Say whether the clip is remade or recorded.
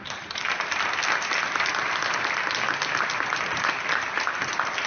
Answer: recorded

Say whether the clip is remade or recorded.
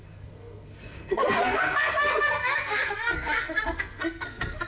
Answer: remade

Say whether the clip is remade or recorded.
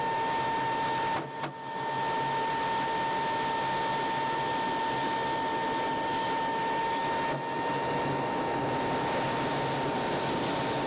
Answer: recorded